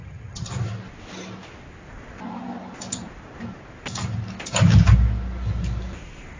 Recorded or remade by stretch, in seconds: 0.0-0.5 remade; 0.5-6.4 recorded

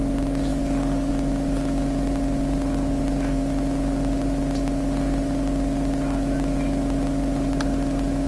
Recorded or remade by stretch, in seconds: 0.0-0.5 recorded; 0.5-1.1 remade; 1.1-8.3 recorded

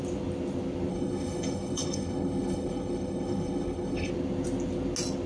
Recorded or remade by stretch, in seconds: 0.0-0.9 recorded; 0.9-4.1 remade; 4.1-5.3 recorded

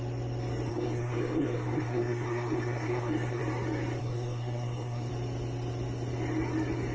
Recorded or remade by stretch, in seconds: 0.0-0.7 recorded; 0.7-3.4 remade; 3.4-4.0 recorded; 4.0-5.1 remade; 5.1-6.9 recorded

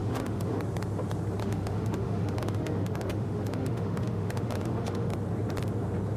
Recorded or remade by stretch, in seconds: 0.0-0.6 remade; 0.6-1.4 recorded; 1.4-5.1 remade; 5.1-6.2 recorded

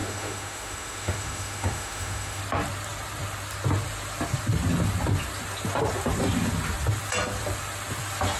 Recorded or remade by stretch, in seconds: 0.0-2.4 remade; 2.4-8.4 recorded

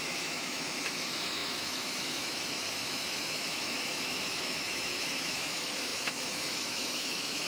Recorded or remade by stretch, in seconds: 0.0-7.5 remade

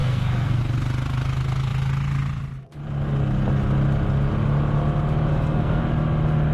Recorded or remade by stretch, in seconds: 0.0-0.6 remade; 0.6-5.3 recorded; 5.3-5.8 remade; 5.8-6.5 recorded